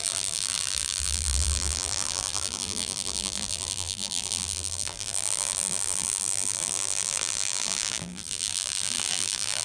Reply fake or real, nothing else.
fake